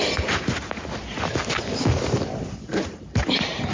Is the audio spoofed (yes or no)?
no